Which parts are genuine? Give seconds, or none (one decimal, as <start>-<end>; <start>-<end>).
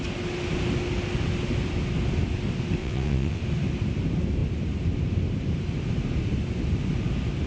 0.0-2.8; 3.4-7.5